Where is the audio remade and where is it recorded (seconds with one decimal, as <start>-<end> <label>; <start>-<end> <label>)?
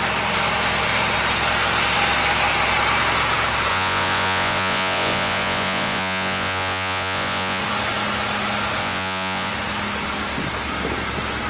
0.0-3.7 recorded; 3.7-7.6 remade; 7.6-8.8 recorded; 8.8-9.5 remade; 9.5-11.5 recorded